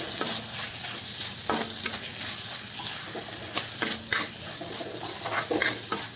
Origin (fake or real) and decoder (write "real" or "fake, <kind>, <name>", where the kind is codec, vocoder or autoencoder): real